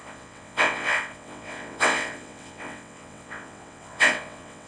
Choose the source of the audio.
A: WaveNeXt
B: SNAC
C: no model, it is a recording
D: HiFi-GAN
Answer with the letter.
A